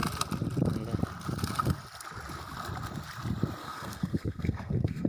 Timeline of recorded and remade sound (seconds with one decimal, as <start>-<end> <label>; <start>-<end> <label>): 0.0-3.6 recorded; 3.6-5.1 remade